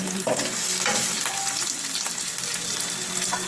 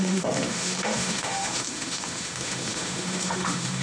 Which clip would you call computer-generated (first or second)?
second